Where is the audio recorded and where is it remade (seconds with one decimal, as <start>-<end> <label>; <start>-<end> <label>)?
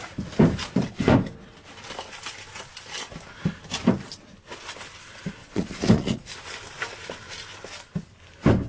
0.0-5.4 recorded; 5.4-6.3 remade; 6.3-8.7 recorded